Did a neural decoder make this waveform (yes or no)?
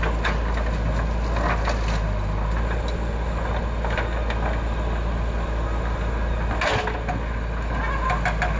no